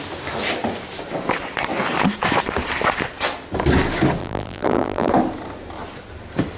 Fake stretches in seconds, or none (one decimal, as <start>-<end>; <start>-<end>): 4.2-5.1